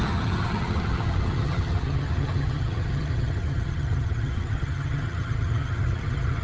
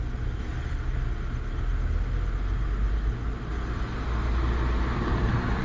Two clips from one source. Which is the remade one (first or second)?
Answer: first